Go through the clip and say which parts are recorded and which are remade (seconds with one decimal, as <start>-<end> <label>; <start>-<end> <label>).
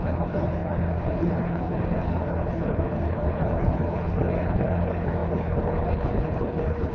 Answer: 0.0-6.9 remade